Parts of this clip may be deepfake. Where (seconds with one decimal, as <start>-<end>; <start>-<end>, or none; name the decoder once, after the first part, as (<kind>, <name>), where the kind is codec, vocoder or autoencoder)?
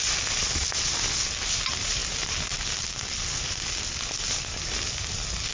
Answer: none